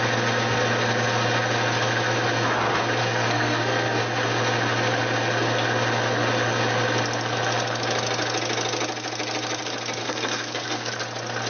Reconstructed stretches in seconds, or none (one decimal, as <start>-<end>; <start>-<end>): 3.0-4.0; 10.0-10.9